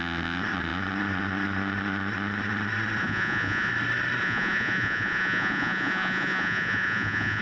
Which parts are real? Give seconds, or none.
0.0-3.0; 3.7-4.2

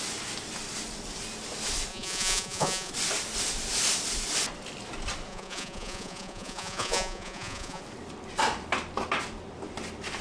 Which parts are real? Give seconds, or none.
0.0-1.9; 2.9-5.3; 7.8-10.2

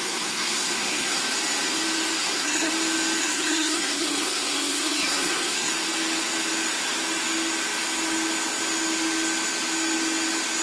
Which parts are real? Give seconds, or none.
1.2-2.2; 2.7-3.2; 5.7-10.6

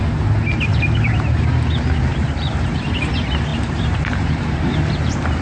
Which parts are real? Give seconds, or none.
0.0-0.7; 1.4-2.1; 3.1-3.5

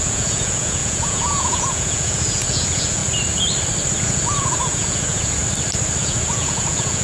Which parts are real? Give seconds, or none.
3.0-4.0; 5.4-6.0

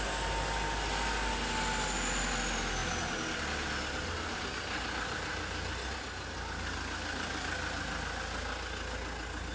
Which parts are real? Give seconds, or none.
0.0-9.5

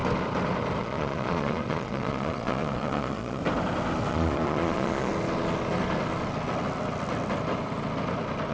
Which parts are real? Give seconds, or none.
0.0-0.8; 3.4-4.1; 5.1-8.5